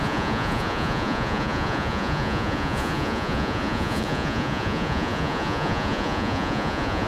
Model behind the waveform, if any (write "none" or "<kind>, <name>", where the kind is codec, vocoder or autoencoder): vocoder, Vocos